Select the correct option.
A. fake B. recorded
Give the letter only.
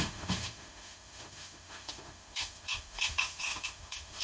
A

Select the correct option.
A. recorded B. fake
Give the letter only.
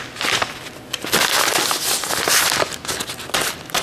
A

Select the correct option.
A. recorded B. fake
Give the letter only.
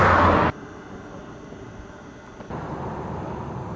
A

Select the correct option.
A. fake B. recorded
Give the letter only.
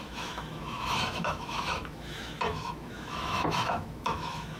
A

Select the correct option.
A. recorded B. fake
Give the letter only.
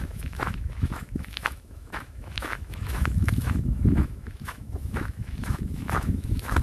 B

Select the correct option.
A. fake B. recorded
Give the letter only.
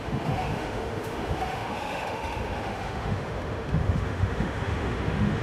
A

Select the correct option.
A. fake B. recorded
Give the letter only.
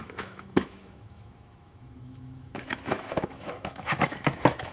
A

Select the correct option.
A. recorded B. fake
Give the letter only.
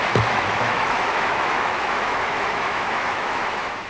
B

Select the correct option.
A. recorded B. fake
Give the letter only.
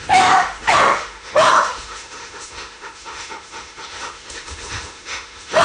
B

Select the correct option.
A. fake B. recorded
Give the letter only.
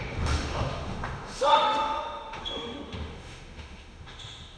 A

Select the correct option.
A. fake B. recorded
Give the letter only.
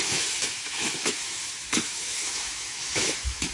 A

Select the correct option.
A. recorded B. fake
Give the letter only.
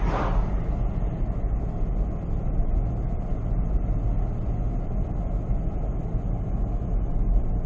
A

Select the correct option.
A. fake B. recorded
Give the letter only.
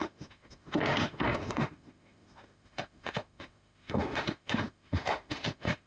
A